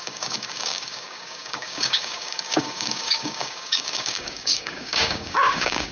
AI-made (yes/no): yes